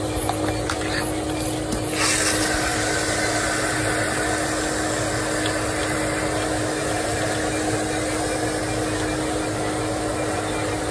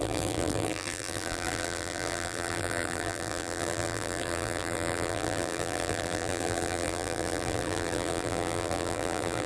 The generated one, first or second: second